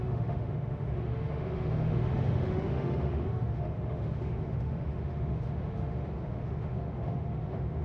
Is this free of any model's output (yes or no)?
no